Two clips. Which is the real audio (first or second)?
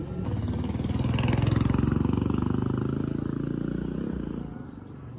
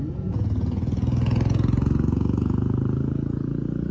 first